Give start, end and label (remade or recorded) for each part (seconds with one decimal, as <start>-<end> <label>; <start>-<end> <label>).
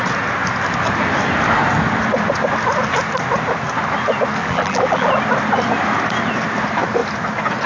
0.0-4.4 recorded; 4.4-5.1 remade; 5.1-7.7 recorded